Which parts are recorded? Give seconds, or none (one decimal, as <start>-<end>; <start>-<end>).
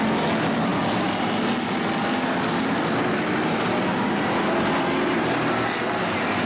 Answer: 0.0-6.5